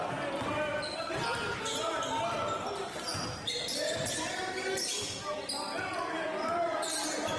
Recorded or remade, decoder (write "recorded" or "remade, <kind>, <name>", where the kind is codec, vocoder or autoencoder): recorded